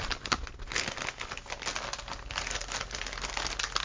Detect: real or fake real